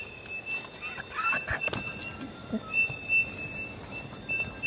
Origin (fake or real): real